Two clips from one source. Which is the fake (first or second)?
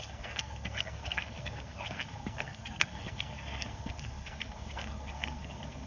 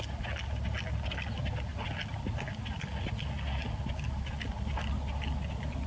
first